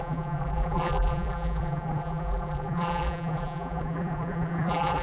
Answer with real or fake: fake